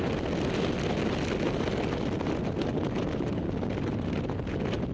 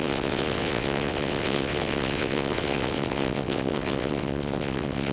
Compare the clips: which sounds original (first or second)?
first